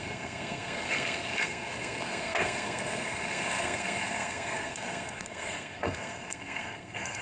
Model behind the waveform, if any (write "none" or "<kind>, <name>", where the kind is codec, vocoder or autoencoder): codec, SNAC